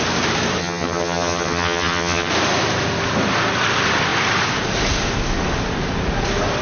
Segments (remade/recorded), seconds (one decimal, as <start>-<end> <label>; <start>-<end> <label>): 0.0-0.6 recorded; 0.6-2.3 remade; 2.3-6.6 recorded